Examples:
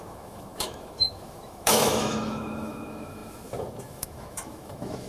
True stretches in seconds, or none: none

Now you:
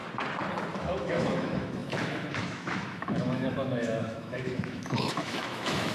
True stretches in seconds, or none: 0.0-0.8